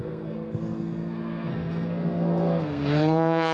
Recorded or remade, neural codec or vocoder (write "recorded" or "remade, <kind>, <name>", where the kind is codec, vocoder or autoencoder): remade, codec, SNAC